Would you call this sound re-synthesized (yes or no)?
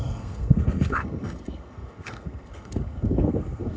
yes